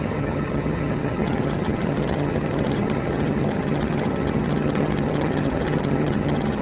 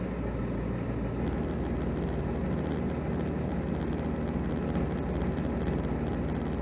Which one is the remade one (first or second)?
first